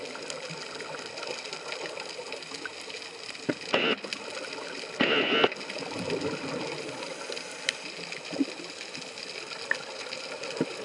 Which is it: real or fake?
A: real